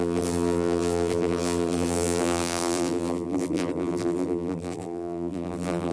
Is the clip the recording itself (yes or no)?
no